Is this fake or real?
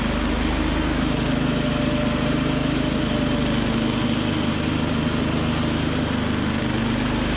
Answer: real